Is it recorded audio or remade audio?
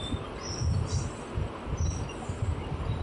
recorded